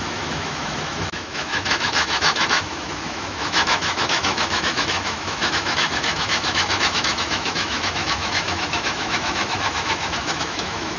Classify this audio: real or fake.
fake